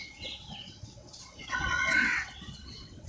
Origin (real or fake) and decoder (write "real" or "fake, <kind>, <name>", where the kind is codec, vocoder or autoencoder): fake, vocoder, WaveNeXt